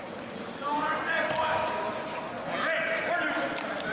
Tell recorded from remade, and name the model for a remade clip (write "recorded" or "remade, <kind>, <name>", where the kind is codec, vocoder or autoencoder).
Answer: recorded